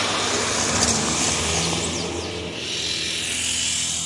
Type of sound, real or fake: real